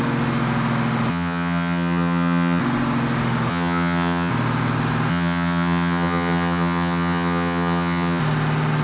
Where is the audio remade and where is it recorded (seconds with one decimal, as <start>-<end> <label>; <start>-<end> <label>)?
0.0-1.1 recorded; 1.1-2.6 remade; 2.6-3.5 recorded; 3.5-4.3 remade; 4.3-5.1 recorded; 5.1-8.2 remade; 8.2-8.8 recorded